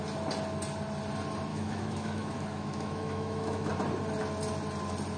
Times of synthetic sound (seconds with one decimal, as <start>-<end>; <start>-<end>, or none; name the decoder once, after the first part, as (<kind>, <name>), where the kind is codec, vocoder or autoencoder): 1.5-3.7 (autoencoder, DAC-VAE)